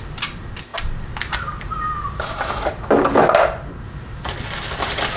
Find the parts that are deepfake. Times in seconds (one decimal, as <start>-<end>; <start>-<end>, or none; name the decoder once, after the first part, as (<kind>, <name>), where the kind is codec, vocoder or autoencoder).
none